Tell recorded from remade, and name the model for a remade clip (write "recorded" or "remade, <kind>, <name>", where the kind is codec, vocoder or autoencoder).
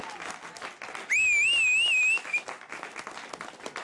recorded